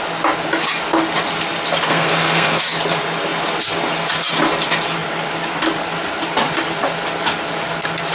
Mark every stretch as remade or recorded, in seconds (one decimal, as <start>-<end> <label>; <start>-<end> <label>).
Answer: 0.0-1.9 recorded; 1.9-2.6 remade; 2.6-8.1 recorded